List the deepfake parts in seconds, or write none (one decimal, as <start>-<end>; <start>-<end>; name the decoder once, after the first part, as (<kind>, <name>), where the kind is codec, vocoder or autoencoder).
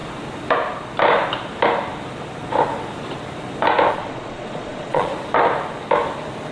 3.9-5.1 (vocoder, Vocos)